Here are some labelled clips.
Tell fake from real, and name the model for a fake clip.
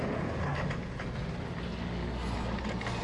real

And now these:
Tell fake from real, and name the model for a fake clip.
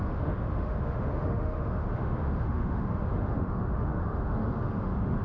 fake, autoencoder, DAC-VAE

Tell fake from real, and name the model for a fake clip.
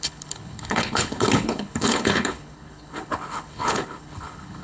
fake, codec, HILCodec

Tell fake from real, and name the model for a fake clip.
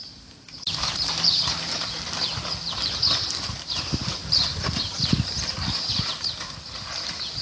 fake, vocoder, BigVGAN v2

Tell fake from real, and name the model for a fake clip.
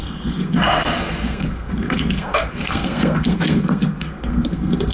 fake, codec, SNAC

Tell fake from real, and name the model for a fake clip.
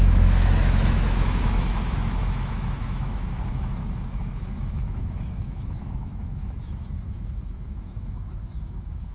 fake, autoencoder, DAC-VAE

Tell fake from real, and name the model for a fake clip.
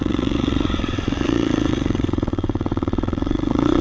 fake, vocoder, WaveNeXt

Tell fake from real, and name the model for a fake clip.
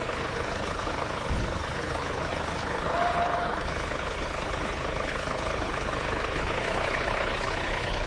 fake, codec, HILCodec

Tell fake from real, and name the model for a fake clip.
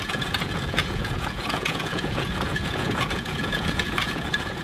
fake, vocoder, Vocos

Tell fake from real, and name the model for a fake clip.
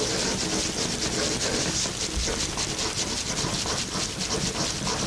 real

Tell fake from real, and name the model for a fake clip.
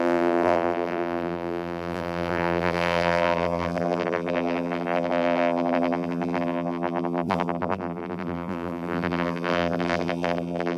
fake, vocoder, BigVGAN v2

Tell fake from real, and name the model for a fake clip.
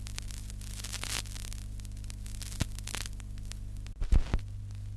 real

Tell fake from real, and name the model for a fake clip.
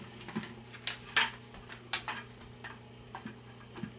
real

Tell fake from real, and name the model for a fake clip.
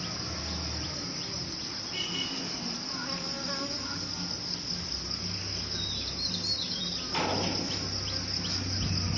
real